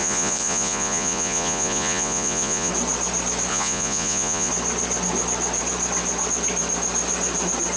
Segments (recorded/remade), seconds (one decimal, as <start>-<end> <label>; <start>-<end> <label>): 0.0-2.7 remade; 2.7-3.5 recorded; 3.5-4.5 remade; 4.5-7.8 recorded